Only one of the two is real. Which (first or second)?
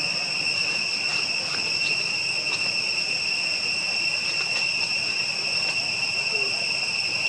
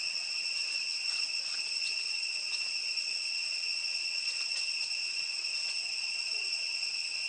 first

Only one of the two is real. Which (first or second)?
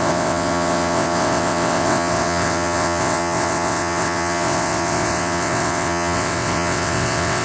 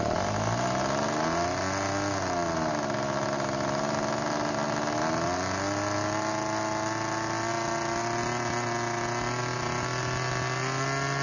second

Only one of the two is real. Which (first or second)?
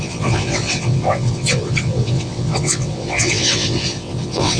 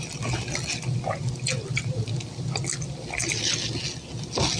second